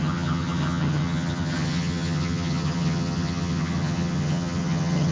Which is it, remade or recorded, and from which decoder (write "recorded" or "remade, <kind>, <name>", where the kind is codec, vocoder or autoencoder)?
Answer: remade, vocoder, HiFi-GAN